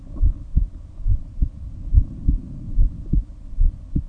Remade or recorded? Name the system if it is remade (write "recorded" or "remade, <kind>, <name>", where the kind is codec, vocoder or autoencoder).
recorded